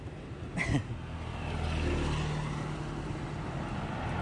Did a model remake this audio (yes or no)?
no